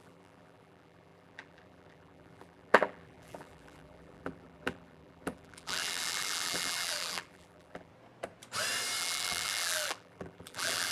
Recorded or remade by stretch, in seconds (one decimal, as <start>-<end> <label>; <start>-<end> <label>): 0.0-7.9 remade; 7.9-9.0 recorded; 9.0-10.9 remade

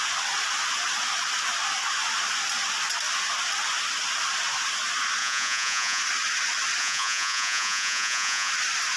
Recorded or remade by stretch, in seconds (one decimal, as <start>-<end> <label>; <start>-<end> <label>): 0.0-5.2 recorded; 5.2-6.0 remade; 6.0-6.8 recorded; 6.8-8.5 remade; 8.5-9.0 recorded

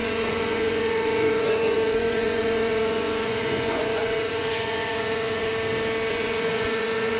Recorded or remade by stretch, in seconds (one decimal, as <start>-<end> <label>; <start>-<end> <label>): 0.0-5.5 remade; 5.5-6.1 recorded; 6.1-7.2 remade

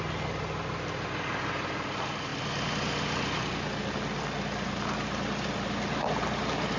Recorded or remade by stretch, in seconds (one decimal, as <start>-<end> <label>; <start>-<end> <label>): 0.0-6.8 recorded

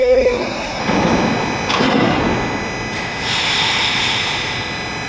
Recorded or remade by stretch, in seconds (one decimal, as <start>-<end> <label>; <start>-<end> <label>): 0.0-0.8 remade; 0.8-1.8 recorded; 1.8-2.2 remade; 2.2-5.1 recorded

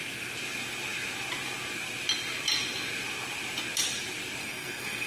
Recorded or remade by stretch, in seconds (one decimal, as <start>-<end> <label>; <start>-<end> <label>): 0.0-4.4 recorded; 4.4-5.1 remade

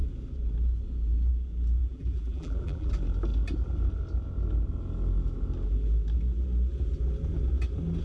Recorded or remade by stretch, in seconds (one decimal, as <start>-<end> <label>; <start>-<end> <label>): 0.0-1.8 recorded; 1.8-2.9 remade; 2.9-8.0 recorded